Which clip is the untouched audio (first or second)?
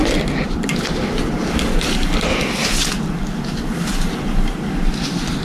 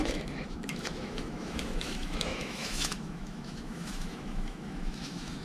first